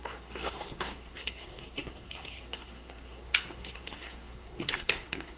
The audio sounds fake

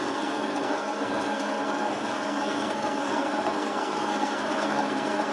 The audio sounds fake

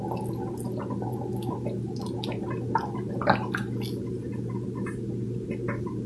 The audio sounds real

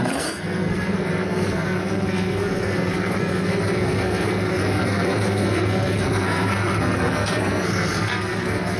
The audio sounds fake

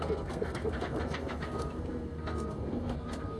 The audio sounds fake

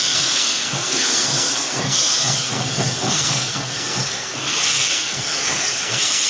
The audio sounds fake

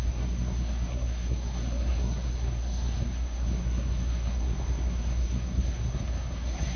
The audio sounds fake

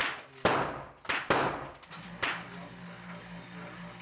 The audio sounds real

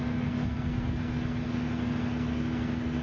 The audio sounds fake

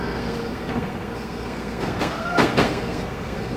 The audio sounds fake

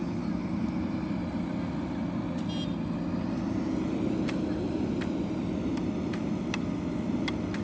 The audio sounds real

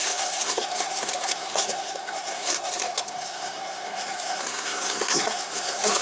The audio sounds fake